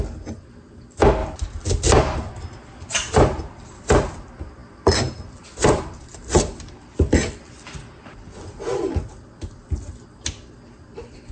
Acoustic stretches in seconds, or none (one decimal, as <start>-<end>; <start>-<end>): 0.0-1.2; 3.9-4.6; 8.9-11.3